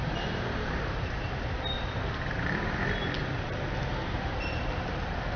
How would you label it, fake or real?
fake